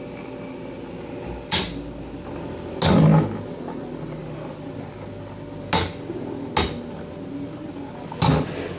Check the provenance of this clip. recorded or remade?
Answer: recorded